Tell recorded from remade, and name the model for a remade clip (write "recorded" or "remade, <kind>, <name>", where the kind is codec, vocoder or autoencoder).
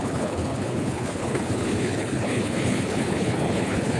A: remade, codec, HILCodec